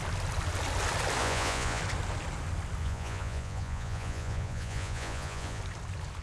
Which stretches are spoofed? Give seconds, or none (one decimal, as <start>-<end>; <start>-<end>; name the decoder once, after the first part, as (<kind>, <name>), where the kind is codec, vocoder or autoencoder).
1.2-1.8 (vocoder, Vocos); 2.8-5.6